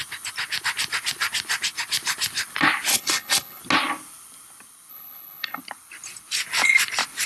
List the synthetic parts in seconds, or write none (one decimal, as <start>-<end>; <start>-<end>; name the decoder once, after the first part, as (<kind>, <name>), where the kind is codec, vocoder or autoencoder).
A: 2.9-3.6 (codec, HILCodec); 4.9-5.6